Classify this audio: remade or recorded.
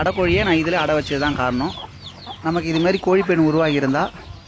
recorded